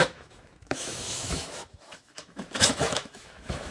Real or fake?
fake